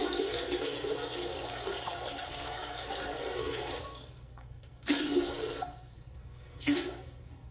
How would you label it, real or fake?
fake